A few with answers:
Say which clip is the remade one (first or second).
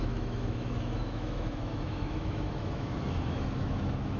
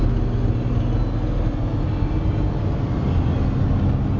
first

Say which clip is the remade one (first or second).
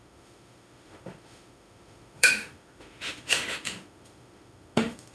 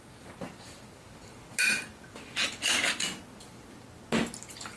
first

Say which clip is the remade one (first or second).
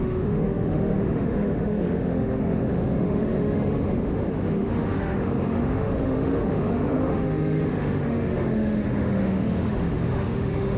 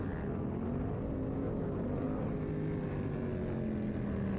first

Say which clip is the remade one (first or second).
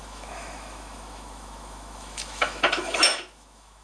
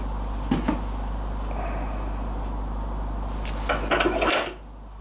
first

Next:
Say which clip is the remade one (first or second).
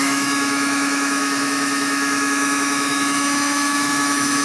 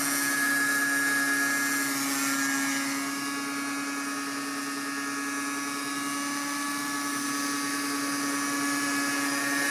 first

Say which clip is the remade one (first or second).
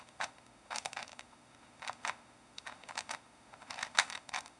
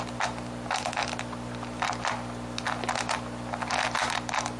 first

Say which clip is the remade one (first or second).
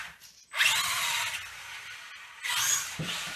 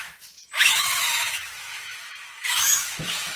second